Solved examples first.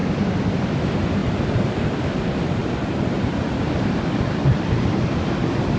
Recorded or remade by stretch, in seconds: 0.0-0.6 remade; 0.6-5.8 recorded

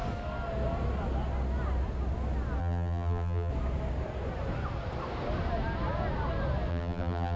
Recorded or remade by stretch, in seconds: 0.0-2.6 recorded; 2.6-3.5 remade; 3.5-6.7 recorded; 6.7-7.4 remade

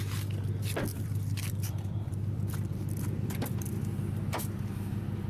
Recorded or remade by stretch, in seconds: 0.0-0.9 recorded; 0.9-4.1 remade; 4.1-5.3 recorded

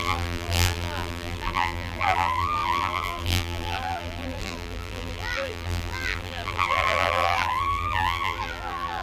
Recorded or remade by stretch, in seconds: 0.0-9.0 remade

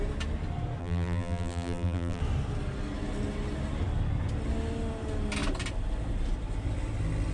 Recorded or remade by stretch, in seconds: 0.0-0.8 recorded; 0.8-2.2 remade; 2.2-7.3 recorded